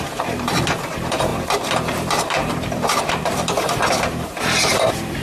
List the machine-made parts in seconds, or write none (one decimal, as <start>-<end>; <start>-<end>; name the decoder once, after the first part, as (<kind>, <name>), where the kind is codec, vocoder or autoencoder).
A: 0.0-5.2 (vocoder, BigVGAN v2)